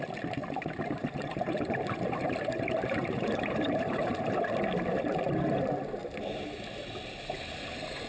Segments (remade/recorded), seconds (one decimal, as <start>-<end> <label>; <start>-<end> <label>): 0.0-0.4 recorded; 0.4-4.3 remade; 4.3-8.1 recorded